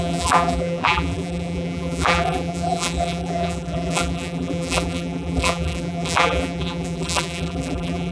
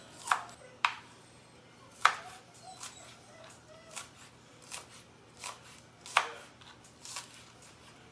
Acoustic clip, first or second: second